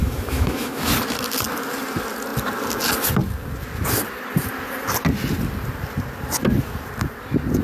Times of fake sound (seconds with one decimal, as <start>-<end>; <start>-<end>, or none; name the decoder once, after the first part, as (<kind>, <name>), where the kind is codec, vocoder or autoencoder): 0.0-0.9 (autoencoder, DAC-VAE)